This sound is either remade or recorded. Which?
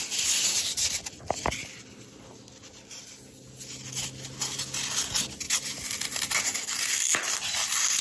recorded